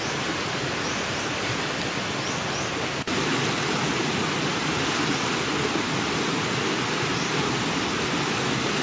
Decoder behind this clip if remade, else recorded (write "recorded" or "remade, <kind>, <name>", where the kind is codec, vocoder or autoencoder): recorded